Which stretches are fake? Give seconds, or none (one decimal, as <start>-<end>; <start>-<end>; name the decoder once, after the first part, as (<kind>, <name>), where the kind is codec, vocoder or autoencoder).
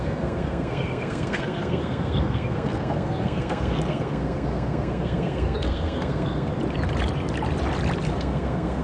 0.0-6.5 (codec, SNAC); 8.1-8.8